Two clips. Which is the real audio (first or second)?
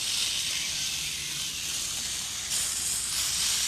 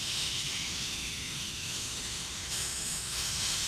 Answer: first